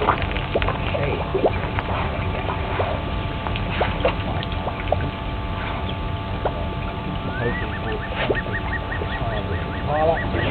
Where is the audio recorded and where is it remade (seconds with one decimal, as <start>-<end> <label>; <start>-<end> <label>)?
0.0-1.3 recorded; 1.3-2.2 remade; 2.2-10.5 recorded